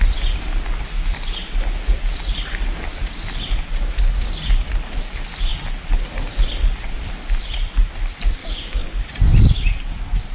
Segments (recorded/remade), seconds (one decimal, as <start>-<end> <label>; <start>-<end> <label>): 0.0-8.4 recorded; 8.4-9.1 remade; 9.1-10.3 recorded